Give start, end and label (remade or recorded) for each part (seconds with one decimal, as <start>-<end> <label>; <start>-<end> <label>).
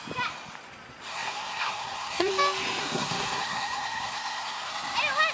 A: 0.0-1.1 recorded; 1.1-2.3 remade; 2.3-2.8 recorded; 2.8-4.7 remade; 4.7-5.3 recorded